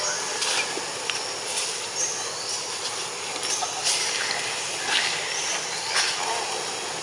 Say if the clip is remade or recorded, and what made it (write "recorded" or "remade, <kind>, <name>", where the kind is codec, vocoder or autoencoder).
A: recorded